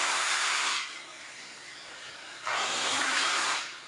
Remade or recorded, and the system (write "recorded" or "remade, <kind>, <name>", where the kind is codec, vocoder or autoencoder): remade, codec, SNAC